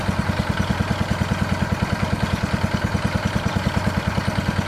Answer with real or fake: real